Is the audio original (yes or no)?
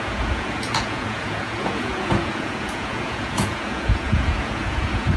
no